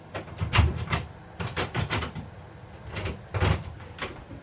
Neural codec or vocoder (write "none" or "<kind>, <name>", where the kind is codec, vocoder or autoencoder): none